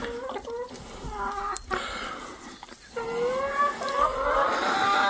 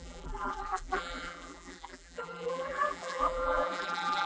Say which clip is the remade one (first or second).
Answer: second